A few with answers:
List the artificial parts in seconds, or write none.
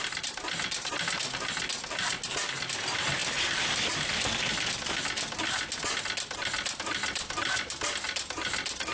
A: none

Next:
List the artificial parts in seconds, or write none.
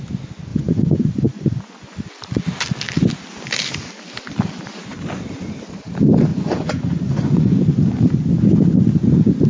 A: 0.5-2.0 (vocoder, Vocos); 6.3-7.6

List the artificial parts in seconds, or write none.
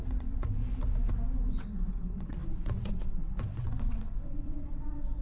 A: 0.0-0.6 (vocoder, WaveNeXt); 1.5-5.2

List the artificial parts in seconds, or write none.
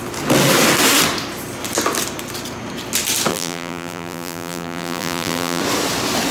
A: 3.3-5.6 (vocoder, BigVGAN v2)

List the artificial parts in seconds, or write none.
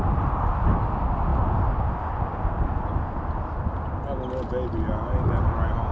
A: none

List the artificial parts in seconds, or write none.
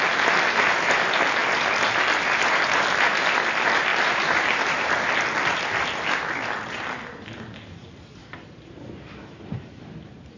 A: 3.9-5.1 (vocoder, BigVGAN v2); 8.2-9.9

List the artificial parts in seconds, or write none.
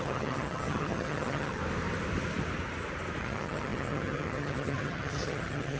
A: 0.0-1.6 (vocoder, HiFi-GAN); 3.2-5.8